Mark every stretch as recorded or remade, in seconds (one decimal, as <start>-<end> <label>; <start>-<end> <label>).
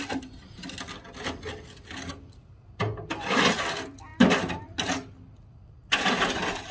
0.0-6.7 recorded